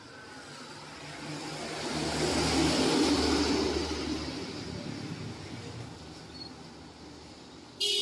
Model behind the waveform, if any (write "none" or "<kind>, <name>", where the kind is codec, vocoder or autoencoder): none